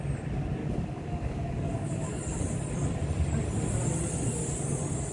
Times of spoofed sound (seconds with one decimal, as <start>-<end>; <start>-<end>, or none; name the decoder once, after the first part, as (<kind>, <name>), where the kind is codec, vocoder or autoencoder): 0.6-2.2 (codec, DAC)